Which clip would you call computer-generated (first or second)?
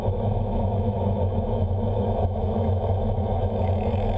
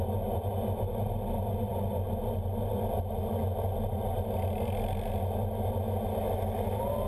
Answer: first